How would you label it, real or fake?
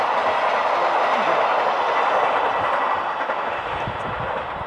real